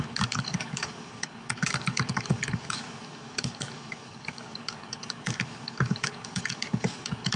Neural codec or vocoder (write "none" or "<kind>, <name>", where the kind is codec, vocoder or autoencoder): codec, DAC